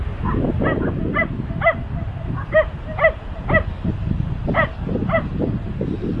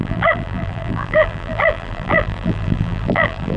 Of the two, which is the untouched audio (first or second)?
first